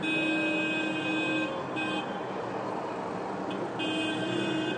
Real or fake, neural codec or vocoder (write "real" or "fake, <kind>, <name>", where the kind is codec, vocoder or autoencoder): real